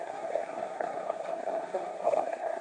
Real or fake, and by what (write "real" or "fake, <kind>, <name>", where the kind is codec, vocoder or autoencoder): fake, codec, SNAC